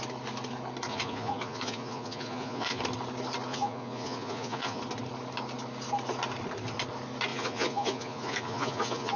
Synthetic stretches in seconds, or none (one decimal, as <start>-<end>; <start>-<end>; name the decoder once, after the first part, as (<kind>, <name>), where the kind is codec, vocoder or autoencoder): 0.9-2.8 (vocoder, Vocos); 3.5-4.8; 7.3-9.2